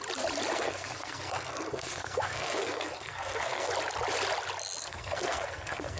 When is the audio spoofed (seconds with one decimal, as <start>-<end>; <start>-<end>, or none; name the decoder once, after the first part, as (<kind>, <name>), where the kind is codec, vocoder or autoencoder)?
0.5-3.7 (codec, SNAC); 4.8-6.0